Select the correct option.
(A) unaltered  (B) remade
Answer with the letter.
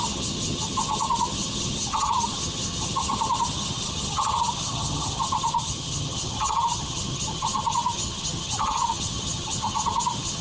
B